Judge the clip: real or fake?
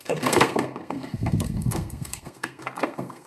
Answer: fake